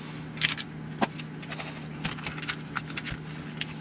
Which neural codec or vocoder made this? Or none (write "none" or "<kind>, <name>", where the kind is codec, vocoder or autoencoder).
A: none